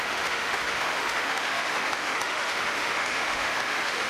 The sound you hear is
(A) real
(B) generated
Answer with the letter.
B